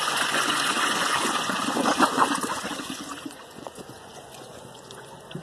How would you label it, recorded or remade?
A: remade